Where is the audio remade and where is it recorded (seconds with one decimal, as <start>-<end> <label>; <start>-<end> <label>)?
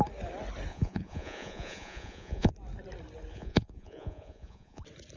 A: 0.0-0.7 recorded; 0.7-2.5 remade; 2.5-3.3 recorded; 3.3-4.8 remade; 4.8-5.2 recorded